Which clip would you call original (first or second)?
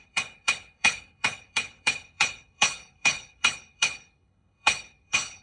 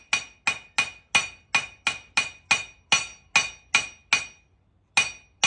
second